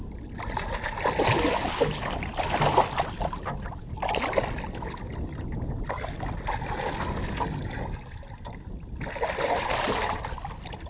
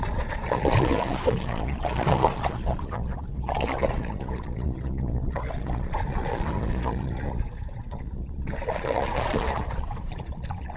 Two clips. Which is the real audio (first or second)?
first